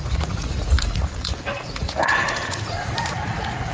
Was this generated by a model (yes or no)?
yes